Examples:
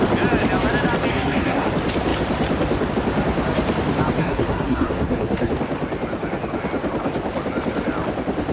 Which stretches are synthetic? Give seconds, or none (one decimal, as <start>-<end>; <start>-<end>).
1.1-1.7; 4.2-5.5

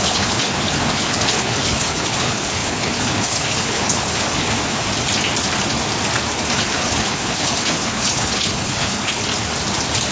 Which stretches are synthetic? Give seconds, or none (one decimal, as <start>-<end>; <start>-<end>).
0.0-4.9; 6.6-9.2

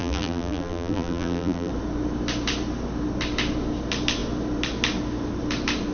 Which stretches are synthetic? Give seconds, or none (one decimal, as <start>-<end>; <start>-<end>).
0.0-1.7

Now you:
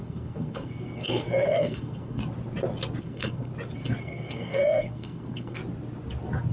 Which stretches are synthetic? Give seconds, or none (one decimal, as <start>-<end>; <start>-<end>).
0.0-2.2; 3.0-3.5; 4.0-5.6

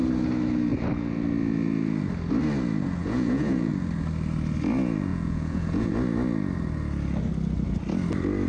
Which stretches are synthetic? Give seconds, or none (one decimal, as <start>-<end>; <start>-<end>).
3.0-3.7; 5.1-5.9

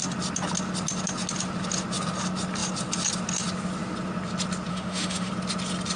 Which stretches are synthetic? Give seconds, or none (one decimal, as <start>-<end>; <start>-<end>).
4.7-5.3